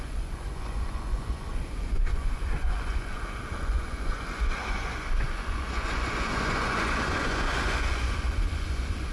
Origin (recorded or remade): remade